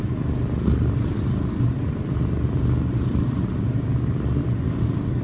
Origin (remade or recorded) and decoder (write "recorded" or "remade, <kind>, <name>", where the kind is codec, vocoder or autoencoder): remade, vocoder, BigVGAN v2